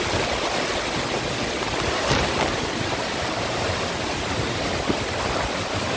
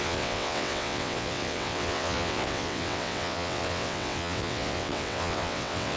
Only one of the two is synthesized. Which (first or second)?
second